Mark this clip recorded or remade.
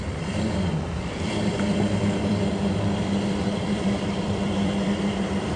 remade